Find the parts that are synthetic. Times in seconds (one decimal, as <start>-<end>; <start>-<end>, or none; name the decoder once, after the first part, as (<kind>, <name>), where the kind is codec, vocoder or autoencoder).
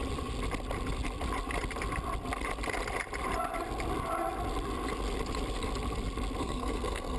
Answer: 6.4-7.2 (codec, SNAC)